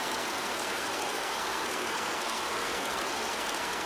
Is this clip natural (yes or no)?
no